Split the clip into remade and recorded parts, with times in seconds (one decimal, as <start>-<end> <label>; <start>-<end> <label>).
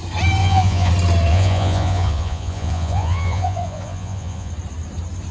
0.0-0.4 recorded; 0.4-0.9 remade; 0.9-1.3 recorded; 1.3-4.5 remade; 4.5-5.3 recorded